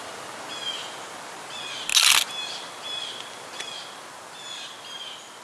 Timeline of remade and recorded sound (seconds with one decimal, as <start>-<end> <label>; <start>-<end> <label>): 0.0-5.4 recorded